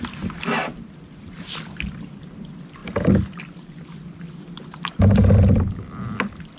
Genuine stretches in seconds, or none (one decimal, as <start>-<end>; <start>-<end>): 0.0-6.6